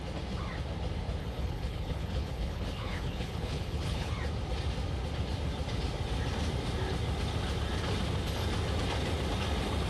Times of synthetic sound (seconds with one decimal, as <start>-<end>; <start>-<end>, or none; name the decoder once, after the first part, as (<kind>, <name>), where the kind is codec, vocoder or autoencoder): 1.2-4.1 (codec, HILCodec)